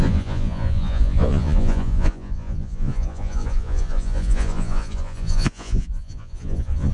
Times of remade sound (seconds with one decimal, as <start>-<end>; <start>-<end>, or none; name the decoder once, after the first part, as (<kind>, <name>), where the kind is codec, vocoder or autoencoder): 0.0-6.9 (vocoder, Vocos)